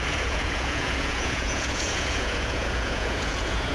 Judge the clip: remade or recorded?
remade